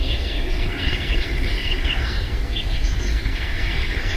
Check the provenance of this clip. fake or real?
fake